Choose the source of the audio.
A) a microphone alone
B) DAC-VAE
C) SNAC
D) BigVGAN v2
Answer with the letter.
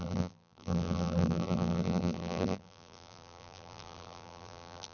D